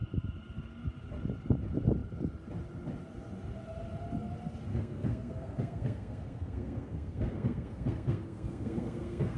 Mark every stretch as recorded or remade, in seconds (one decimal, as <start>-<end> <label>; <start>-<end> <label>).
0.0-4.7 recorded; 4.7-9.4 remade